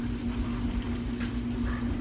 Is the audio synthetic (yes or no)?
no